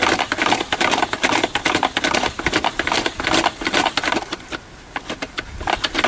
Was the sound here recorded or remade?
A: remade